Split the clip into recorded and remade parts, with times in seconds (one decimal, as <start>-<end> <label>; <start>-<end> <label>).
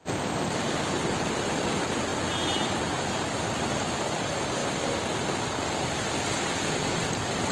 0.0-7.5 recorded